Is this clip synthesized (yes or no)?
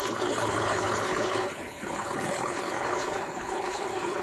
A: yes